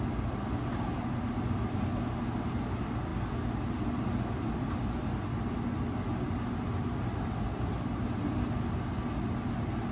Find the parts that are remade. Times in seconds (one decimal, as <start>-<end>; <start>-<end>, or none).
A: none